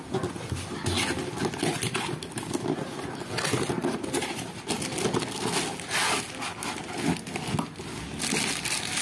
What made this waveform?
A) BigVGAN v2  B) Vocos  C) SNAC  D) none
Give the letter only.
D